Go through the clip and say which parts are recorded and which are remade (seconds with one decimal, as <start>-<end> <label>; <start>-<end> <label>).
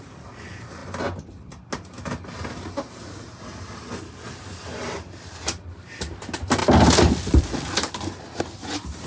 0.0-9.1 recorded